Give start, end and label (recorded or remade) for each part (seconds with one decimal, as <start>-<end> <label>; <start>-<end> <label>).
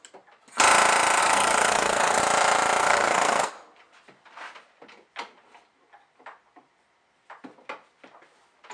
0.0-1.2 recorded; 1.2-2.2 remade; 2.2-2.8 recorded; 2.8-3.5 remade; 3.5-8.7 recorded